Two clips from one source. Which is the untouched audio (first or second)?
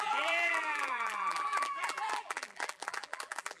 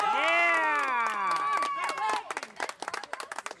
second